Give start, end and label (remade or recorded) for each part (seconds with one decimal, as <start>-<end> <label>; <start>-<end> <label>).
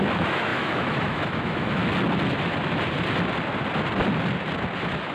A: 0.0-1.8 remade; 1.8-5.1 recorded